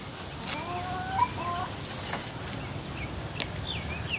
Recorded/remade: recorded